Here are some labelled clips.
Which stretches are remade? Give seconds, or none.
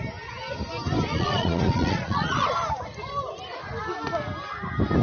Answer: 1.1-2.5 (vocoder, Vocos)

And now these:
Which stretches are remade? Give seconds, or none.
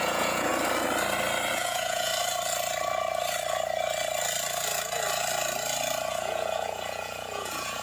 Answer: 0.0-0.5 (vocoder, Vocos); 1.5-2.1; 6.1-7.8